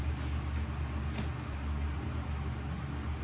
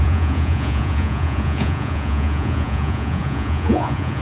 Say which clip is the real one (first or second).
first